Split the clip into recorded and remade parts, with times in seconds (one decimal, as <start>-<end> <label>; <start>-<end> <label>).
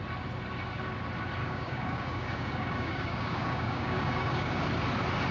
0.0-1.4 recorded; 1.4-4.6 remade; 4.6-5.3 recorded